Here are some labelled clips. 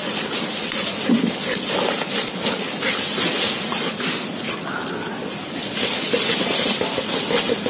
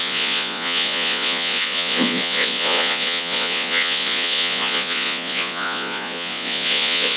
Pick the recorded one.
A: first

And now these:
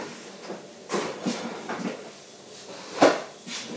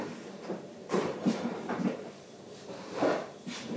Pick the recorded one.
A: first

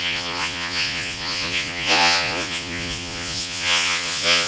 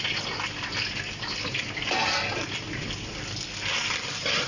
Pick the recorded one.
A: second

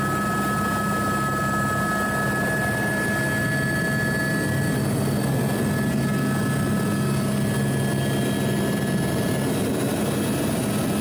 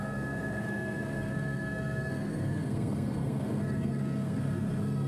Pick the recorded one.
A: first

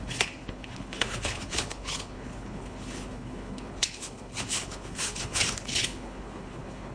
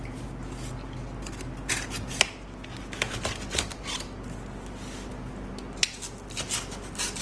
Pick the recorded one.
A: second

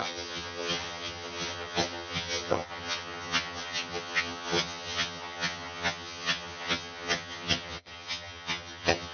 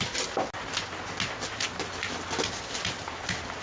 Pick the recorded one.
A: second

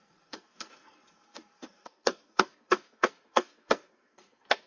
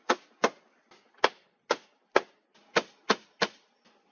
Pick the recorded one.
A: second